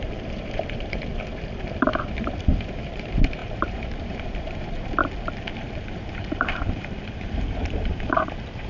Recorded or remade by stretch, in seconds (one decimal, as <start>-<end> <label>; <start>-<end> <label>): 0.0-1.1 remade; 1.1-2.2 recorded; 2.2-5.0 remade; 5.0-5.6 recorded; 5.6-8.7 remade